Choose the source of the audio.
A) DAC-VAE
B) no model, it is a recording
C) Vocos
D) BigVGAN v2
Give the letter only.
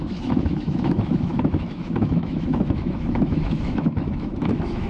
A